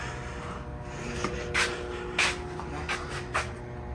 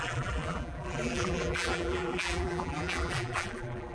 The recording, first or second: first